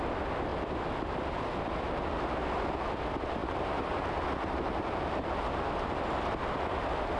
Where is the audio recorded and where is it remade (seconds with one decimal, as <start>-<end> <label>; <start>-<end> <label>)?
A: 0.0-3.4 recorded; 3.4-4.1 remade; 4.1-7.2 recorded

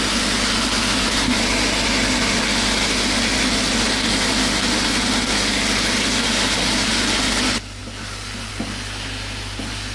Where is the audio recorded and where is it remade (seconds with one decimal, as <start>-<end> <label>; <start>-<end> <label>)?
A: 0.0-9.9 recorded

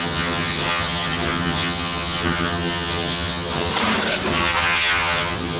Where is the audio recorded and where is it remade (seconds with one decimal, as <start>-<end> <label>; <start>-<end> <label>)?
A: 0.0-3.7 remade; 3.7-4.3 recorded; 4.3-5.6 remade

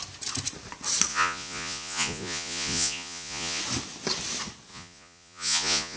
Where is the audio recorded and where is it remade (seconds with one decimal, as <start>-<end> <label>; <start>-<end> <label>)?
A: 0.0-1.1 recorded; 1.1-3.6 remade; 3.6-4.7 recorded; 4.7-6.0 remade

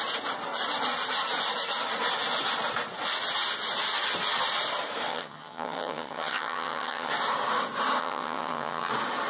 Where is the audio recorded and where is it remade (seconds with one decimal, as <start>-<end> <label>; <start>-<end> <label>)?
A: 0.0-5.1 recorded; 5.1-7.1 remade; 7.1-8.0 recorded; 8.0-8.9 remade; 8.9-9.3 recorded